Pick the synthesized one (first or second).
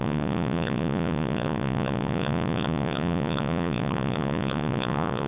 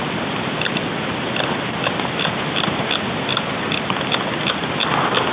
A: first